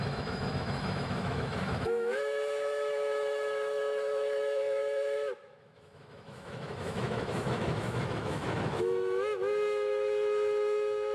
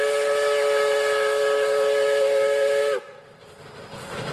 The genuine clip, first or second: second